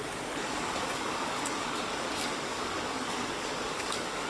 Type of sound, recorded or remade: remade